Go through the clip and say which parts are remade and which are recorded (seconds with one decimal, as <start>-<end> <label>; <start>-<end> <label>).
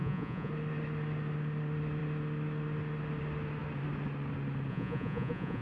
0.0-0.5 remade; 0.5-4.7 recorded; 4.7-5.6 remade